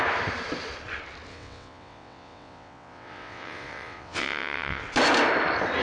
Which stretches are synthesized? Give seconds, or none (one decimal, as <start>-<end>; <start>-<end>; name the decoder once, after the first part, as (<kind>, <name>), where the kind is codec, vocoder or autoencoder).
1.3-4.8 (vocoder, WaveNeXt)